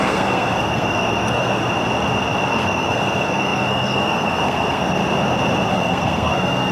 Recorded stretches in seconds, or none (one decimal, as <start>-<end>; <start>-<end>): 1.6-2.5; 5.0-5.7